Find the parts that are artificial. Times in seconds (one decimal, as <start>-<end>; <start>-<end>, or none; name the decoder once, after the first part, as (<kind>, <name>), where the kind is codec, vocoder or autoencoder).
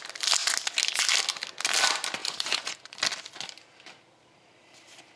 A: 2.2-3.0 (vocoder, Vocos)